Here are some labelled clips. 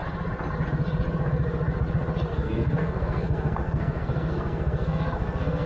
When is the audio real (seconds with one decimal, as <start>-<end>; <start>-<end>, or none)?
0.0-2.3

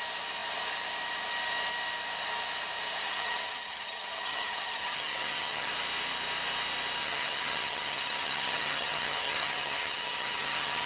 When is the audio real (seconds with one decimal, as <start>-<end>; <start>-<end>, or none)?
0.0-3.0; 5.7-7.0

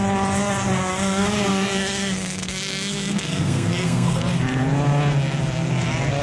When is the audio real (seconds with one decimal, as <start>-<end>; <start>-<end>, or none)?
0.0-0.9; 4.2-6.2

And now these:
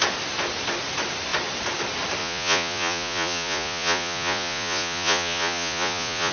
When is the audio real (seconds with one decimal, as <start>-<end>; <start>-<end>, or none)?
0.0-2.2

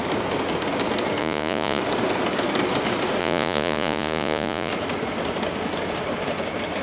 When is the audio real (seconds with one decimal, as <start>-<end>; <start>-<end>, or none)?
0.0-1.2; 1.8-3.2; 4.7-6.8